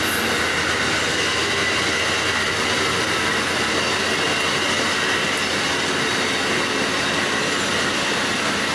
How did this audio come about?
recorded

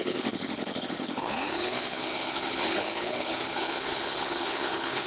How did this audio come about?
remade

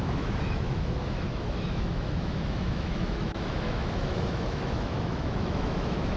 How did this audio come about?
remade